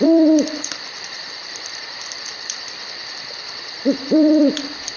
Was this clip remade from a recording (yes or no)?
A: yes